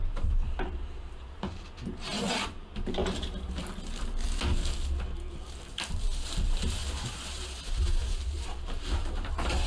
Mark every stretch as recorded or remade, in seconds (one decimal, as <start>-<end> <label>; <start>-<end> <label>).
0.0-3.6 remade; 3.6-5.7 recorded; 5.7-9.7 remade

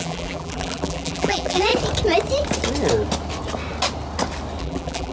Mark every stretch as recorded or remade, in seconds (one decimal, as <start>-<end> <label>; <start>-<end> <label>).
0.0-1.7 remade; 1.7-4.6 recorded; 4.6-5.1 remade

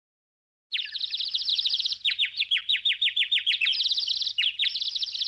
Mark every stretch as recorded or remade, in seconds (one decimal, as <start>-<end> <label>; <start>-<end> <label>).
0.0-1.5 recorded; 1.5-2.2 remade; 2.2-5.3 recorded

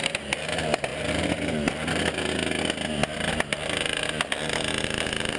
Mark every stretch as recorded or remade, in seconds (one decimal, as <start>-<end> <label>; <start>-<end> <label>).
0.0-2.4 remade; 2.4-5.4 recorded

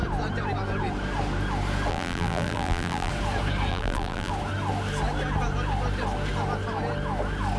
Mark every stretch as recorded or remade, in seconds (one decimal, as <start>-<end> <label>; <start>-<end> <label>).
0.0-1.9 recorded; 1.9-3.1 remade; 3.1-3.7 recorded; 3.7-4.3 remade; 4.3-7.6 recorded

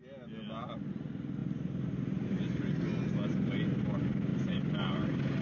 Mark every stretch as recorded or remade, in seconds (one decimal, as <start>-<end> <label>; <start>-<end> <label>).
0.0-4.3 recorded; 4.3-5.4 remade